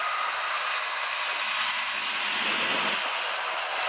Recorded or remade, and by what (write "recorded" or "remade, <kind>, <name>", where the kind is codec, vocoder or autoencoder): recorded